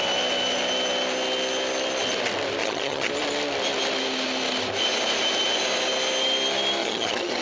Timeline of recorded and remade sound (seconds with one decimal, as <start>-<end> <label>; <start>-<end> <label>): 0.0-2.6 recorded; 2.6-3.1 remade; 3.1-6.8 recorded; 6.8-7.4 remade